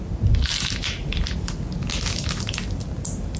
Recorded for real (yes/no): yes